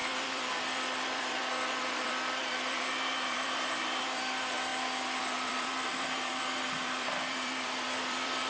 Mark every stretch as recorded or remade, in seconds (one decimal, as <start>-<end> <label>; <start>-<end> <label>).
0.0-4.7 remade; 4.7-5.2 recorded; 5.2-8.5 remade